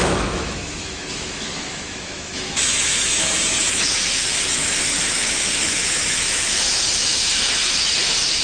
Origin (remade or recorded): remade